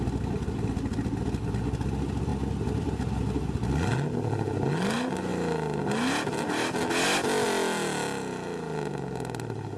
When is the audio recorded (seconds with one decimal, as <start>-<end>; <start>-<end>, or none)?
0.0-9.8